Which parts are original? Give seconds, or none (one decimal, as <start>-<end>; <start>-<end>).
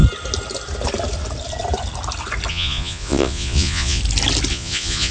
0.0-2.5; 4.0-4.5